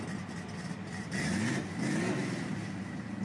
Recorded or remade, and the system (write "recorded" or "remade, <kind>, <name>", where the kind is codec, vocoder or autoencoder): recorded